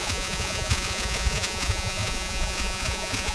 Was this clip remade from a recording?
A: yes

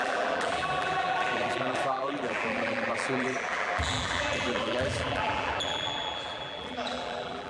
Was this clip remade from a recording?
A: yes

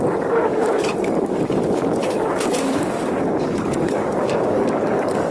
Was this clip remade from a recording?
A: yes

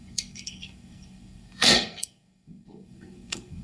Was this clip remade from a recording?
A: yes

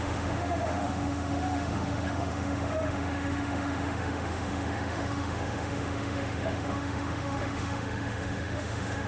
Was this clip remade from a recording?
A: yes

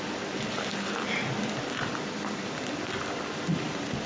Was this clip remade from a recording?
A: no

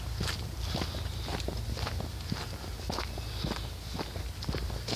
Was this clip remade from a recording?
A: no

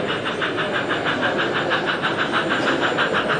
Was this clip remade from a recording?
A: no